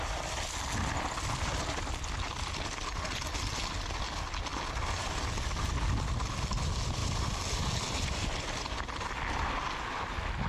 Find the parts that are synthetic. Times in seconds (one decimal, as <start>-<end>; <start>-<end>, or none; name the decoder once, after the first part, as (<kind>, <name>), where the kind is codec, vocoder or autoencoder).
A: none

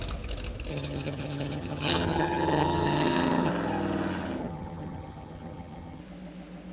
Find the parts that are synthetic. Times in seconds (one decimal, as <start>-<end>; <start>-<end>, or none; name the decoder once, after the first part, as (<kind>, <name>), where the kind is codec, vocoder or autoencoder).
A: 0.7-3.5 (vocoder, HiFi-GAN); 4.4-6.0

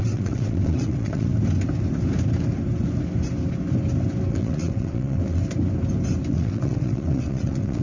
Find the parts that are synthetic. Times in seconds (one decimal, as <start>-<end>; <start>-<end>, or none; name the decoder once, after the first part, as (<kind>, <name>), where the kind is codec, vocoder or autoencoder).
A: 0.0-1.3 (vocoder, WaveNeXt); 4.3-5.4; 6.3-7.8

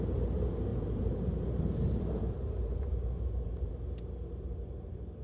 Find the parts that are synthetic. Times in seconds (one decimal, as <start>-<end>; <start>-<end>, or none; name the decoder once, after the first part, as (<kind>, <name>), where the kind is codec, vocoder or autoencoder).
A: 0.7-3.8 (vocoder, BigVGAN v2)

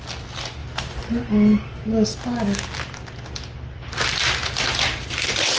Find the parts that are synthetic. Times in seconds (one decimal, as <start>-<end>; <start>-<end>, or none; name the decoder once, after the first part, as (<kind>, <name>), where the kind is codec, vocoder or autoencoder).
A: none

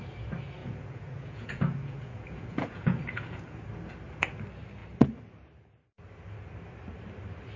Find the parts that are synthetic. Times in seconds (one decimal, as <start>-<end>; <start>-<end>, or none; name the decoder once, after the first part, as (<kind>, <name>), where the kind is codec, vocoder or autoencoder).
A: 0.6-3.6 (vocoder, Vocos)

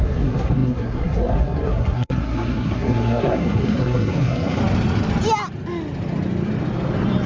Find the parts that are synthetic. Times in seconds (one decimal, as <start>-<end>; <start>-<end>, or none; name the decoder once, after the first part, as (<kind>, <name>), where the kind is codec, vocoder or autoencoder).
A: 0.0-4.6 (codec, SNAC)

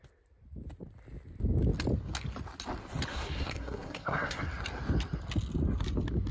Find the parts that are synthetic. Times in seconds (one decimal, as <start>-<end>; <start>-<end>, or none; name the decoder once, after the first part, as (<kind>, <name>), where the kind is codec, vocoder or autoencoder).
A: 3.1-4.5 (codec, SNAC)